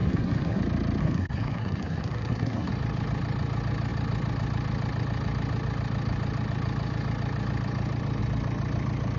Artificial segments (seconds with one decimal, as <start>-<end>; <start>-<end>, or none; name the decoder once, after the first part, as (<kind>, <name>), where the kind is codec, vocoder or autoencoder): 0.0-0.6 (codec, SNAC); 1.0-2.7